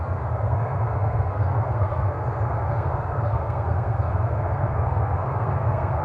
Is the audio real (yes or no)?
no